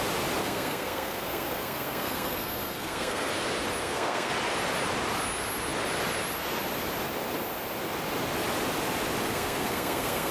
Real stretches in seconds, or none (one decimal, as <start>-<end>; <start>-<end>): 0.0-0.4; 3.3-3.8; 4.3-9.3